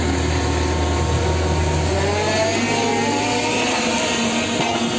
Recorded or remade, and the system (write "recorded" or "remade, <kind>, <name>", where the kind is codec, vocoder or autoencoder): recorded